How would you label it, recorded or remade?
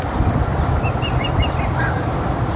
recorded